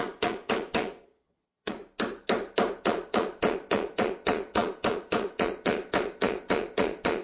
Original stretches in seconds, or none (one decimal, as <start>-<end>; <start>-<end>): 1.8-2.8